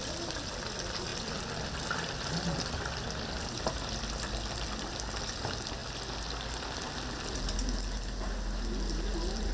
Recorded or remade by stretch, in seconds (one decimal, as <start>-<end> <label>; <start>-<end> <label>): 0.0-9.5 recorded